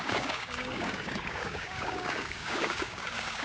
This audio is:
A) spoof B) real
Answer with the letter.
A